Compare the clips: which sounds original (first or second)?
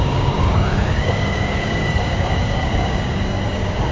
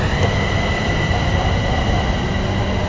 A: second